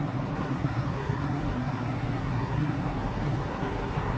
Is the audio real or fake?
fake